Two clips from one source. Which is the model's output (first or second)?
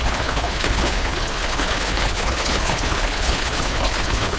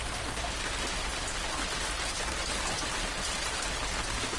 first